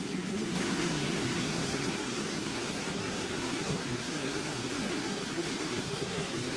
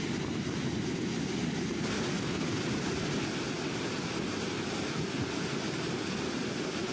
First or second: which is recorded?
second